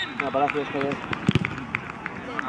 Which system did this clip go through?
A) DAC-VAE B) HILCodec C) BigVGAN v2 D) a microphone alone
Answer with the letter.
D